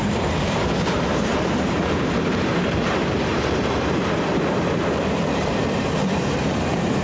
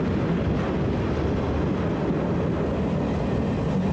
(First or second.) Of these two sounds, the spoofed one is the first